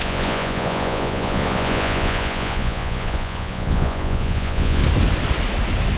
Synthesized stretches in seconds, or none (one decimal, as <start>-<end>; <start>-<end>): 0.0-4.8